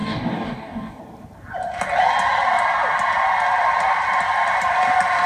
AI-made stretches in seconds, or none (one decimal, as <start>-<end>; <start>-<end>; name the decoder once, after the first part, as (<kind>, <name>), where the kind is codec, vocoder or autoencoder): 0.0-1.0 (codec, DAC)